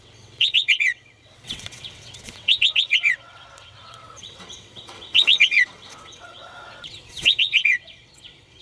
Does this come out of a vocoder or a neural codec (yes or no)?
yes